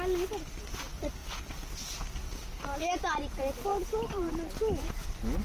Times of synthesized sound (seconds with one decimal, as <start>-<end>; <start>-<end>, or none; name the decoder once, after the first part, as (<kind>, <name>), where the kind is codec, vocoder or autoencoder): 3.7-4.5 (vocoder, BigVGAN v2)